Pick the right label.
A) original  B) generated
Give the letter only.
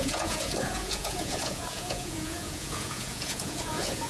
B